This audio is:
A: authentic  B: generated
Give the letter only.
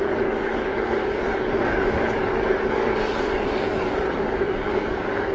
B